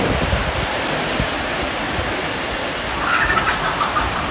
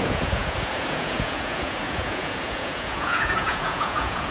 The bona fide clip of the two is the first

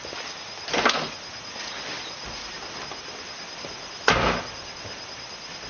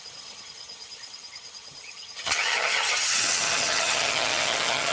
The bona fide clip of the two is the first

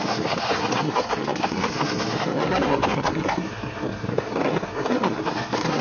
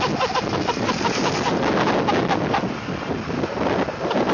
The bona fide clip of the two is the second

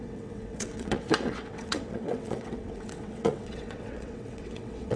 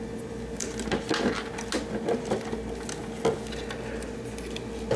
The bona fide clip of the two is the second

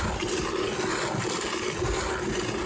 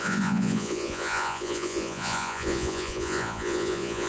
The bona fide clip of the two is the first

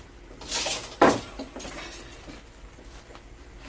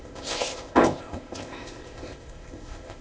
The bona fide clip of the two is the first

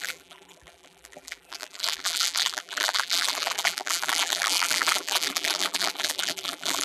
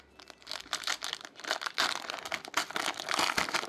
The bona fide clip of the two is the second